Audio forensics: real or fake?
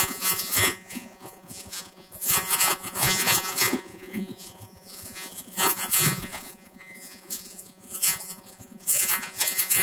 fake